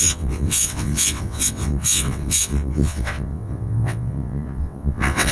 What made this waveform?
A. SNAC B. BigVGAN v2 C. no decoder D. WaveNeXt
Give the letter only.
D